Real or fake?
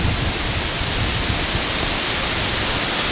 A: real